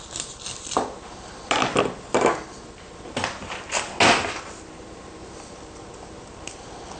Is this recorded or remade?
recorded